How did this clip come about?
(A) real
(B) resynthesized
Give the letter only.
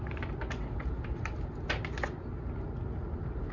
A